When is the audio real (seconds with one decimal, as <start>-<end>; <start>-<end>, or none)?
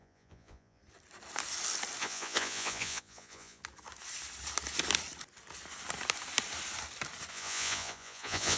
0.8-2.0; 3.6-7.3